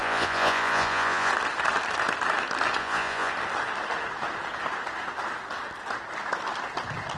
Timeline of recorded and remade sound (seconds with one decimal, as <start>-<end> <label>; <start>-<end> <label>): 0.0-1.3 remade; 1.3-2.8 recorded; 2.8-3.3 remade; 3.3-7.2 recorded